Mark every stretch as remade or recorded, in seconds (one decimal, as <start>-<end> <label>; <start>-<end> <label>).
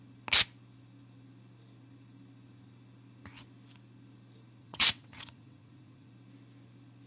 0.0-4.6 recorded; 4.6-6.1 remade; 6.1-7.1 recorded